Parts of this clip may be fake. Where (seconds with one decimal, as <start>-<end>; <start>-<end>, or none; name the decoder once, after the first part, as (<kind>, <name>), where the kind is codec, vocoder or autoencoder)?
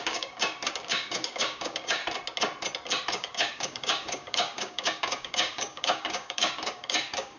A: 0.0-2.0 (codec, DAC); 3.1-7.4